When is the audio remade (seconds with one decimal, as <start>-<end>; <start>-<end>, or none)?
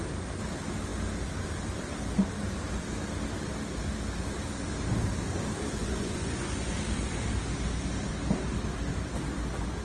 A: 5.8-6.7